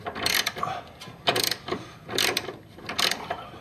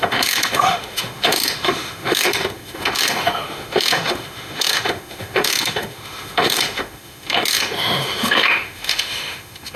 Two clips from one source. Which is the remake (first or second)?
second